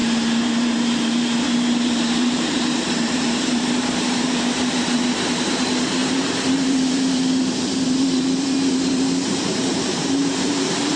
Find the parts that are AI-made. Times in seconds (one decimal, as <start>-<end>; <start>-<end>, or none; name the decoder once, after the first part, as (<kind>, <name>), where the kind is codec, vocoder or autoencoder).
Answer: 0.0-11.0 (vocoder, BigVGAN v2)